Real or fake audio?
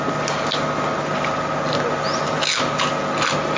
real